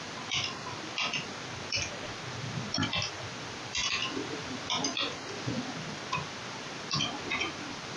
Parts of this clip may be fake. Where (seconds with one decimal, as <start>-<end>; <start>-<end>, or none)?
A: none